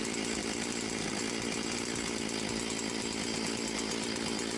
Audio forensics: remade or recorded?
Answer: recorded